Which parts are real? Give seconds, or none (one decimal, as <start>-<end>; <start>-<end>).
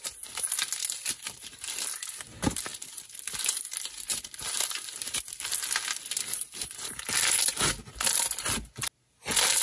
0.0-9.6